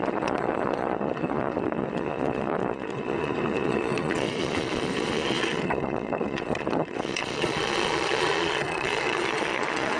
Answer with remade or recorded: remade